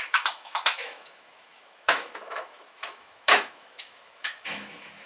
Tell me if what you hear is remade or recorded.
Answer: remade